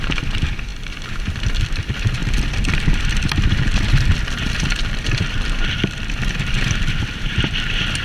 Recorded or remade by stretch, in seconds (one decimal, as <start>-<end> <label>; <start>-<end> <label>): 0.0-0.7 remade; 0.7-1.5 recorded; 1.5-8.0 remade